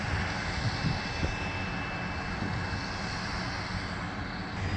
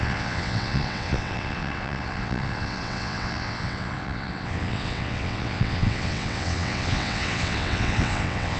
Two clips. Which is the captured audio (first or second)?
first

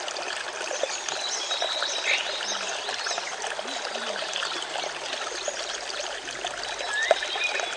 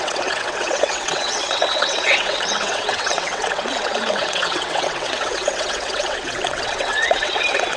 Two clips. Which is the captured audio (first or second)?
first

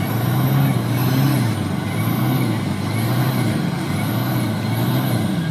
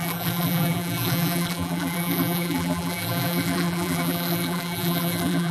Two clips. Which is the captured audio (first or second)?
first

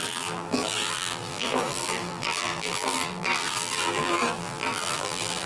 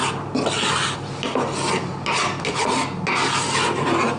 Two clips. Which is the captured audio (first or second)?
second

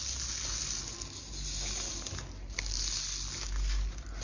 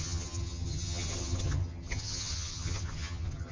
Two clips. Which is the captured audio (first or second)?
first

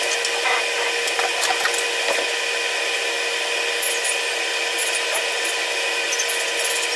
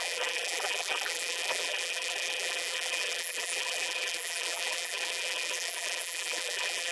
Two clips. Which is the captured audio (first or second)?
first